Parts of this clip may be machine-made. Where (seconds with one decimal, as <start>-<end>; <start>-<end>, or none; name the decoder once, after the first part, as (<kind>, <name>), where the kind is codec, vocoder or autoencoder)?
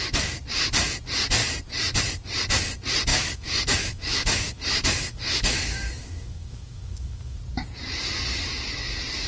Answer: 3.1-7.4 (autoencoder, DAC-VAE)